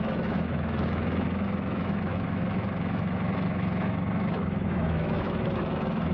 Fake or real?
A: fake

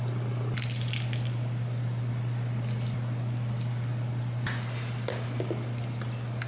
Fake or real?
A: real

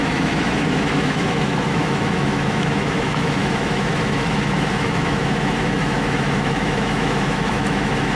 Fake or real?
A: fake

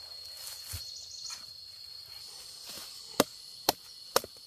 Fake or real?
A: real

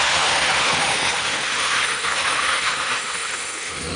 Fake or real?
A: fake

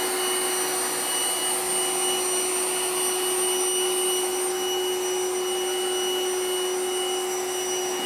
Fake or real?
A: real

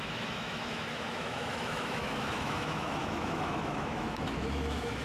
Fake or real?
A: fake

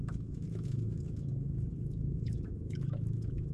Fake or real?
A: fake